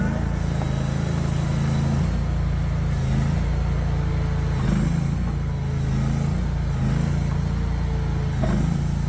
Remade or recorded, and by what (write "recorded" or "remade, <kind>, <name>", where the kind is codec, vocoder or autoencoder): recorded